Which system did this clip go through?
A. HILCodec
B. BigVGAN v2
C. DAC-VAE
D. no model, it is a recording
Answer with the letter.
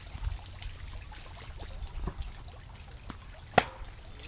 D